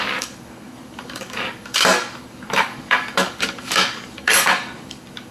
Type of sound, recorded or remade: remade